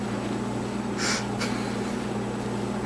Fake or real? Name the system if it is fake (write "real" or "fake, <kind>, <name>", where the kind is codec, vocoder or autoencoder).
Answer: real